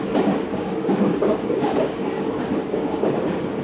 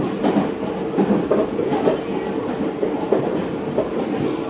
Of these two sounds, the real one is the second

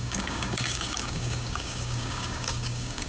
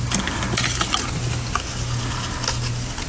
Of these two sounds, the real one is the second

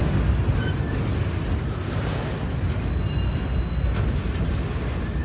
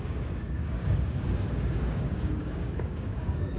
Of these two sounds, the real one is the first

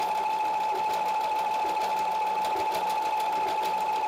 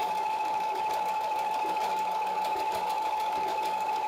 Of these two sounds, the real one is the first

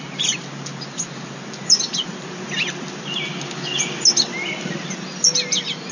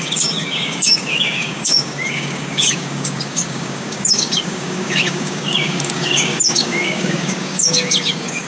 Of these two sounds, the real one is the first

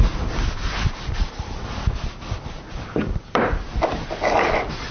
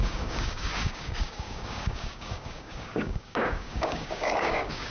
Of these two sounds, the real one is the first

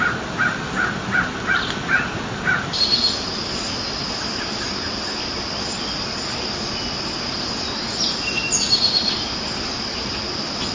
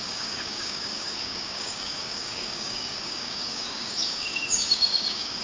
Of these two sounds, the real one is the first